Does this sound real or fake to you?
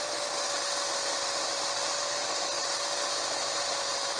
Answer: real